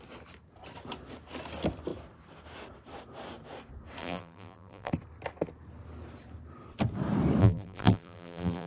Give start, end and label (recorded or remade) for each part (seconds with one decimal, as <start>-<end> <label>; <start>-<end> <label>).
0.0-4.0 recorded; 4.0-4.9 remade; 4.9-7.4 recorded; 7.4-8.7 remade